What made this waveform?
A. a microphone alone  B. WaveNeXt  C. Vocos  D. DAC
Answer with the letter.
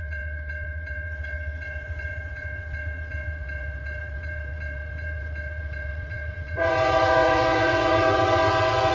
B